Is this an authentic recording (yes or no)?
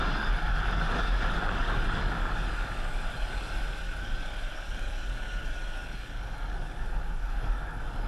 no